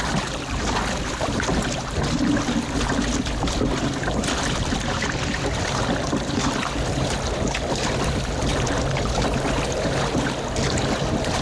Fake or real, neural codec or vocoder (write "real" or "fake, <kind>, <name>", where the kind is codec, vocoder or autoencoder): real